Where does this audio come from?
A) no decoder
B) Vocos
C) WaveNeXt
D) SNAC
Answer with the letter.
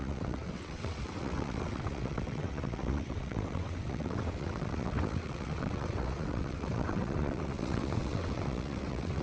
C